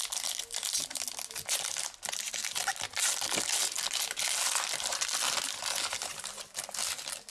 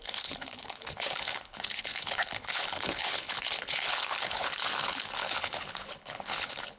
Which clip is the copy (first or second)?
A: second